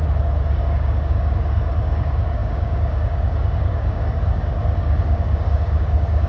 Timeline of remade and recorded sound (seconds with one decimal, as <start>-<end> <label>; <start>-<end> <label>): 0.0-6.3 remade